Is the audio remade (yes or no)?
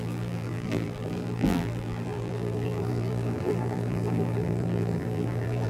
yes